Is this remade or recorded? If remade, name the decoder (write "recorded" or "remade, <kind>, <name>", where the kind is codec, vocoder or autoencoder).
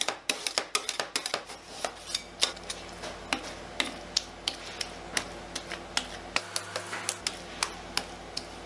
recorded